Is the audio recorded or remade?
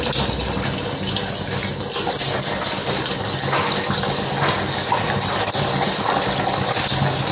recorded